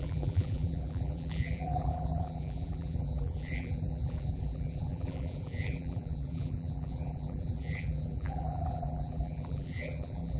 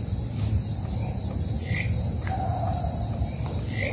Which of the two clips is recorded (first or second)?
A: second